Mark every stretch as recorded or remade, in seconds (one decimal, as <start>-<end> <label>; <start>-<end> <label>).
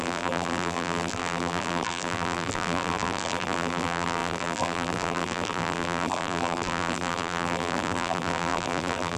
0.0-9.2 remade